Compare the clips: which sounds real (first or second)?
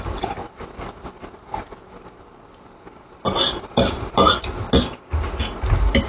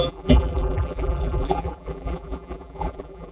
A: first